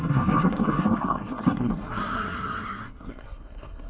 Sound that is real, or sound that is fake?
fake